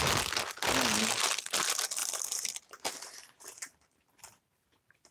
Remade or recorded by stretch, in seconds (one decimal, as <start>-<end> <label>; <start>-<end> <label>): 0.0-2.0 recorded; 2.0-5.1 remade